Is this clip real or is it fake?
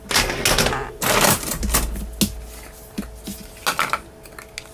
real